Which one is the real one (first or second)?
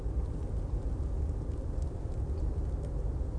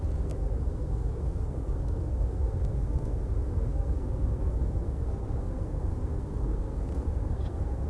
first